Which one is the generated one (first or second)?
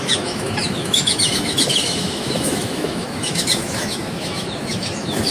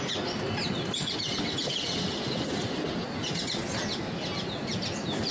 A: first